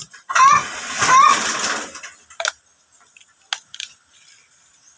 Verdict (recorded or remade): recorded